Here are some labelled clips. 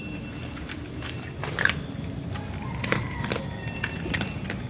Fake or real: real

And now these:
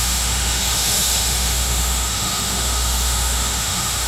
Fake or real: fake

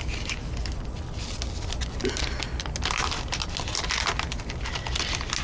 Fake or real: real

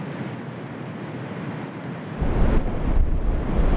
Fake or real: real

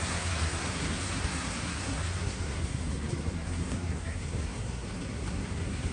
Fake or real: fake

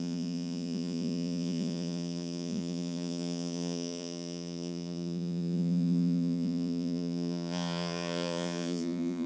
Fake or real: fake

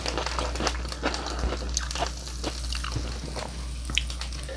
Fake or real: real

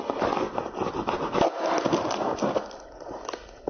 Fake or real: real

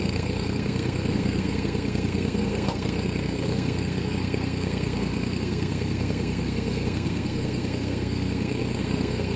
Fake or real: fake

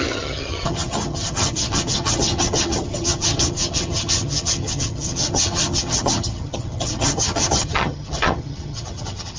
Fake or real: fake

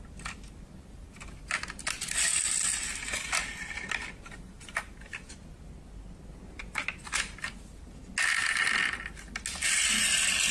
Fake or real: real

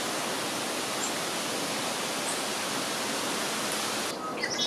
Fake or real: real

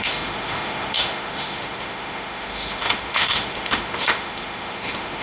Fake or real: fake